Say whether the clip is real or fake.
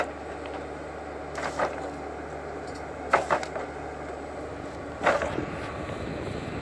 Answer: real